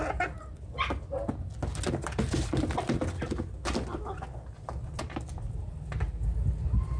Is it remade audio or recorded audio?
recorded